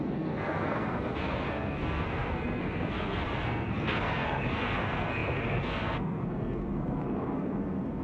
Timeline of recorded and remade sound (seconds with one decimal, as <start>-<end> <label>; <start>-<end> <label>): 0.0-8.0 remade